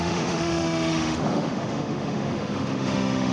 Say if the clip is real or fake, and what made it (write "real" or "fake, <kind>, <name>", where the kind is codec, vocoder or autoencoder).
fake, autoencoder, DAC-VAE